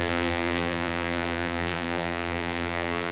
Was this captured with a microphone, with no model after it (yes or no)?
no